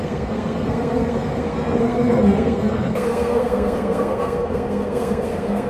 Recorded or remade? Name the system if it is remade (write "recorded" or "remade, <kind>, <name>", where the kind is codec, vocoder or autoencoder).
remade, codec, SNAC